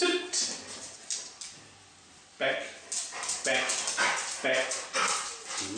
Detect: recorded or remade recorded